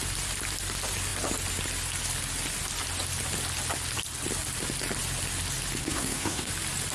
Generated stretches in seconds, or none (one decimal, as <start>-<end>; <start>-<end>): 5.8-6.5